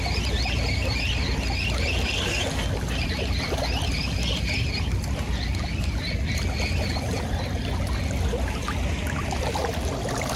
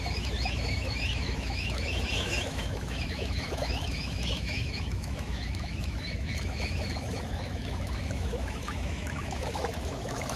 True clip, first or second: first